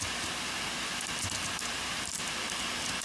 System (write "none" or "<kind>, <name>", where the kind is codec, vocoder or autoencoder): none